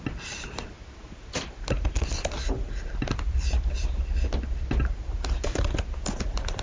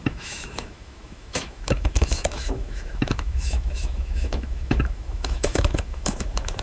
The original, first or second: first